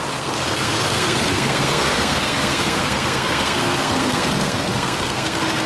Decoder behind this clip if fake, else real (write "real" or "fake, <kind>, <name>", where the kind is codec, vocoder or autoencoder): fake, codec, SNAC